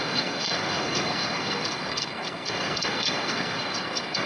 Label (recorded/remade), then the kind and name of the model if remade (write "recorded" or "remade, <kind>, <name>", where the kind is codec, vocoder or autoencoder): remade, codec, SNAC